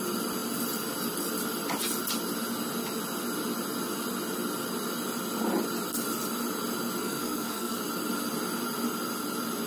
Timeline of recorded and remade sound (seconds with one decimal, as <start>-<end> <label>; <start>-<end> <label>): 0.0-7.0 recorded; 7.0-7.8 remade; 7.8-9.7 recorded